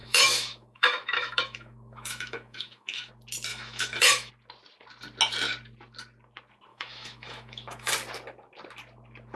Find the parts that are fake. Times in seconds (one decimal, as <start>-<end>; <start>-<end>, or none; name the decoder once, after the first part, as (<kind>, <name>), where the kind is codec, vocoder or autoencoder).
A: 0.0-3.1 (autoencoder, DAC-VAE); 3.5-4.3; 6.7-7.9

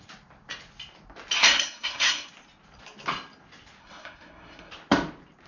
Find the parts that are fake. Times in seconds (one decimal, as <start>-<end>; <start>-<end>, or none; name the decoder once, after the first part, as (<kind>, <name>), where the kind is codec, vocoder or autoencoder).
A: 1.4-2.3 (codec, SNAC); 3.8-4.7

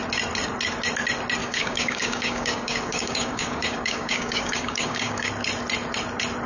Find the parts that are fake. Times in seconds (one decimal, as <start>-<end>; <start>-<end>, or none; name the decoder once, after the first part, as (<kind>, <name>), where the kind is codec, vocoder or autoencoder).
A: 1.4-5.3 (codec, DAC)